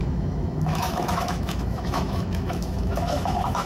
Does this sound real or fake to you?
fake